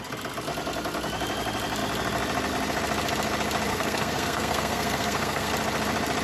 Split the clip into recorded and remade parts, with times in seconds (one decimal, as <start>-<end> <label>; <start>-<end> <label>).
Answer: 0.0-3.7 recorded; 3.7-5.5 remade; 5.5-6.2 recorded

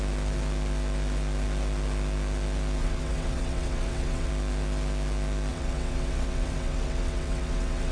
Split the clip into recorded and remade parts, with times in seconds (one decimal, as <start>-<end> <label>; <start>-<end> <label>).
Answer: 0.0-2.8 recorded; 2.8-4.3 remade; 4.3-5.5 recorded; 5.5-7.9 remade

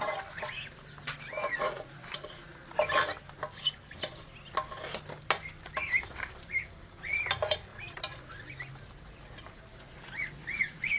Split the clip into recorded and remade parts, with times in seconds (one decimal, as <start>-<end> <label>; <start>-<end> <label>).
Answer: 0.0-1.4 recorded; 1.4-2.2 remade; 2.2-9.7 recorded; 9.7-11.0 remade

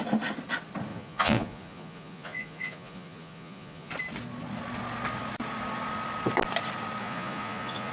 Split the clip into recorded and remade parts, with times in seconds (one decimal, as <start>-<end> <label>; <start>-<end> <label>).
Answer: 0.0-0.9 recorded; 0.9-3.9 remade; 3.9-7.0 recorded; 7.0-7.9 remade

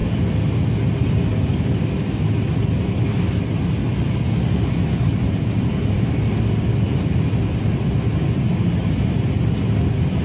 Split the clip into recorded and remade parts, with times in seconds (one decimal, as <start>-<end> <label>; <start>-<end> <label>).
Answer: 0.0-10.2 recorded

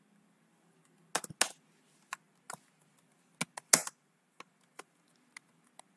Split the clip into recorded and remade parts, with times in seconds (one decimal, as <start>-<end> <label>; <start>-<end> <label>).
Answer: 0.0-6.0 recorded